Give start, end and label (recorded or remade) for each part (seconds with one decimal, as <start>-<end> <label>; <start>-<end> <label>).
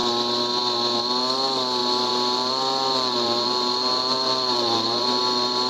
0.0-1.8 recorded; 1.8-5.2 remade; 5.2-5.7 recorded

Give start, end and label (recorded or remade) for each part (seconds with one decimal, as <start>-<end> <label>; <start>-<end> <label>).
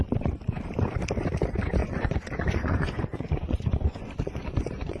0.0-1.8 recorded; 1.8-5.0 remade